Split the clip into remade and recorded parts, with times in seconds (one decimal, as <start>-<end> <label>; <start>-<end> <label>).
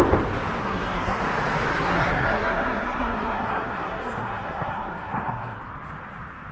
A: 0.0-0.6 recorded; 0.6-1.2 remade; 1.2-1.7 recorded; 1.7-5.6 remade; 5.6-6.5 recorded